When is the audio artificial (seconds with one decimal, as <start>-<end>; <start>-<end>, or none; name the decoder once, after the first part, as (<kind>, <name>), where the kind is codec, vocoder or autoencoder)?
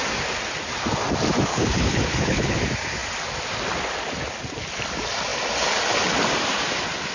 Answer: 1.5-2.6 (codec, HILCodec)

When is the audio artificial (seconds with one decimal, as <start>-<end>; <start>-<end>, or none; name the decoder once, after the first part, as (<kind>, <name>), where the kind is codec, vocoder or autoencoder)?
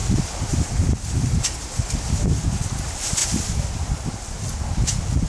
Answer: none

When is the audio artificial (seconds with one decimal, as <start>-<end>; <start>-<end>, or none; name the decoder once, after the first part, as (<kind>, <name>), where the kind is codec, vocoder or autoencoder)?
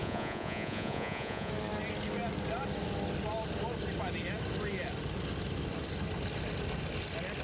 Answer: 0.0-1.5 (vocoder, Vocos)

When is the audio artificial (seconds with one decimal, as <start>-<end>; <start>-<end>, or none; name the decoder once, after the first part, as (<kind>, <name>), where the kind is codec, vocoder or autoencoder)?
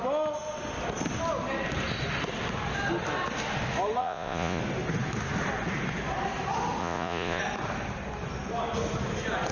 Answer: 4.0-4.6 (vocoder, Vocos); 6.8-7.4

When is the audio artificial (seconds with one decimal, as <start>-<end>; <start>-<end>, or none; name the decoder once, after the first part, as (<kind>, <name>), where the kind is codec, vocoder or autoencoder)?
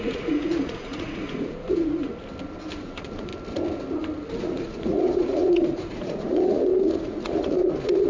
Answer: 0.0-2.1 (vocoder, Vocos); 2.8-3.3; 4.4-8.1